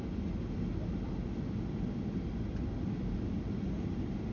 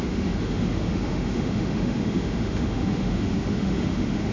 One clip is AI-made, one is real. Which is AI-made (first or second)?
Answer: second